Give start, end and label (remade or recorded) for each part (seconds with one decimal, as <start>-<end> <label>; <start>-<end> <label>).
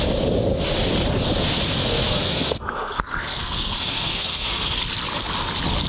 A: 0.0-1.8 recorded; 1.8-4.8 remade; 4.8-5.9 recorded